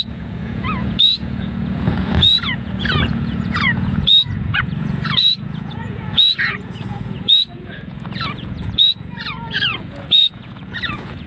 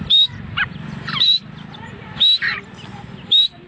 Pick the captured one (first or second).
second